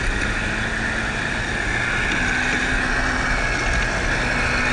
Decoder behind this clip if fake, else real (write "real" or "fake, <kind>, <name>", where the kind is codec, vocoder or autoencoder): real